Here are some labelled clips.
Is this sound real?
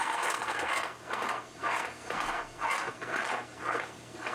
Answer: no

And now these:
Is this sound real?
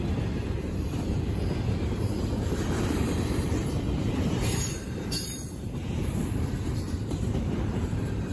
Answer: no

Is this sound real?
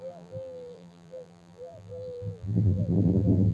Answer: no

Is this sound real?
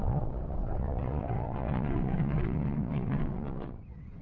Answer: no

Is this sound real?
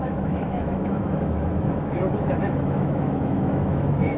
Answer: no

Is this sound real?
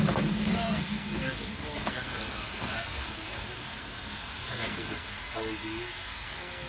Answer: no